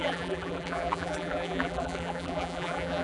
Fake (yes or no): yes